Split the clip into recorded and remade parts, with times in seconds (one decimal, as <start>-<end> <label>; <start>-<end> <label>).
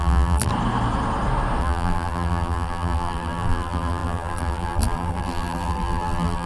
0.0-0.5 remade; 0.5-1.6 recorded; 1.6-6.5 remade